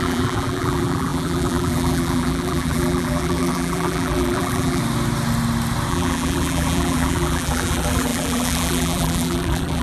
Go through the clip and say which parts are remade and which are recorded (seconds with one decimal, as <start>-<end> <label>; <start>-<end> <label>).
0.0-4.8 remade; 4.8-5.9 recorded; 5.9-9.8 remade